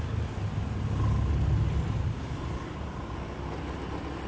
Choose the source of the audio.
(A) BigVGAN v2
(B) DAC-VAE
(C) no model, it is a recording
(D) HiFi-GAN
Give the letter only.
C